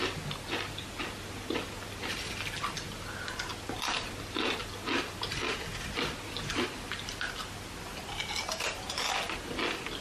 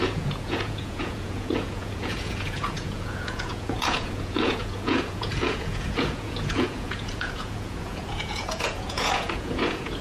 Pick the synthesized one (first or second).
second